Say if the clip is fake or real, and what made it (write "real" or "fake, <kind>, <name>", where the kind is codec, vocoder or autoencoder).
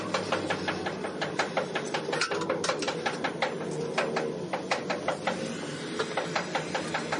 real